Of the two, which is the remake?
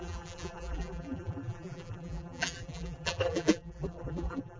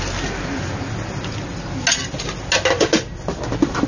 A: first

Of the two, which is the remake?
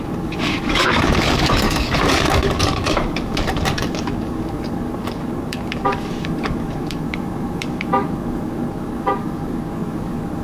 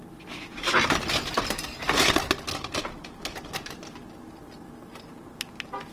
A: first